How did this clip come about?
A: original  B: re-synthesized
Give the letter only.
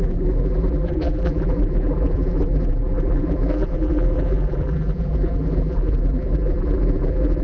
B